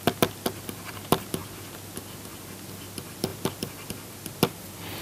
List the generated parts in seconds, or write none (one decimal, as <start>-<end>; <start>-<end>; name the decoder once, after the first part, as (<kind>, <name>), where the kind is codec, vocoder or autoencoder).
none